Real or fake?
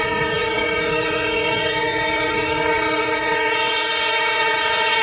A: fake